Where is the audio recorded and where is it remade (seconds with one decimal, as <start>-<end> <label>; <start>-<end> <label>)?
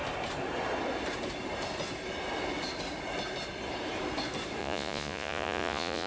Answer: 0.0-4.6 recorded; 4.6-6.1 remade